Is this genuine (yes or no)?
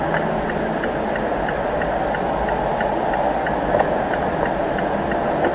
yes